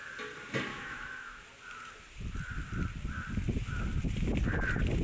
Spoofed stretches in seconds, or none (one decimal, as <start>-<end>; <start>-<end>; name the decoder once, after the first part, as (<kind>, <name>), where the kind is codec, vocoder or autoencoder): 0.7-1.4 (autoencoder, DAC-VAE)